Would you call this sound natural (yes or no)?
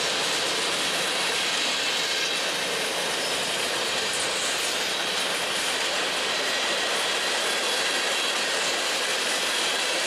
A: yes